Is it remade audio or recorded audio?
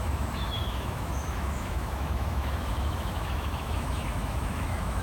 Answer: remade